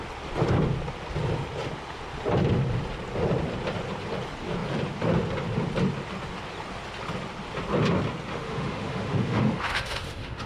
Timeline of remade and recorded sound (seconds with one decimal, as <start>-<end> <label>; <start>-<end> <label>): 0.0-8.3 recorded; 8.3-10.5 remade